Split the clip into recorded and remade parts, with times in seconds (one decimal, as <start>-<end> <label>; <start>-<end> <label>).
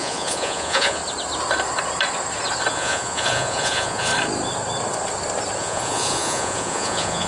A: 0.0-1.0 remade; 1.0-2.7 recorded; 2.7-4.1 remade; 4.1-5.6 recorded; 5.6-7.3 remade